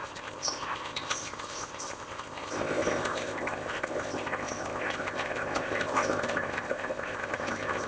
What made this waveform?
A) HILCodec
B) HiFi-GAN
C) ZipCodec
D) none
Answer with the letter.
C